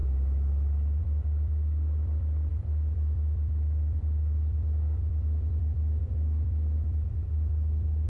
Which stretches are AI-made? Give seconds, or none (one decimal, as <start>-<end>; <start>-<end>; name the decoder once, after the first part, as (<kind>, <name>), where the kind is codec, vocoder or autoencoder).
1.0-8.1 (vocoder, BigVGAN v2)